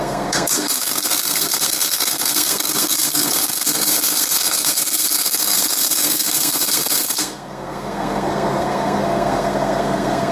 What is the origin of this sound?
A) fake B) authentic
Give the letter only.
A